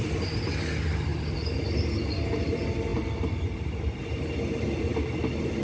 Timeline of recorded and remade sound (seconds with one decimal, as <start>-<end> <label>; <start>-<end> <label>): 0.0-5.6 recorded